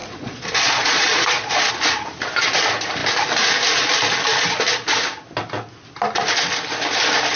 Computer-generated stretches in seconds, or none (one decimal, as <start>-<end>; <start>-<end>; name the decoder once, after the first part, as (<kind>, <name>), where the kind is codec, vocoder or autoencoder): 0.0-1.7 (vocoder, Vocos)